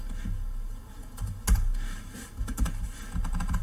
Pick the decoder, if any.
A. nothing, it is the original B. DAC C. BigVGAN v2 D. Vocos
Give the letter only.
A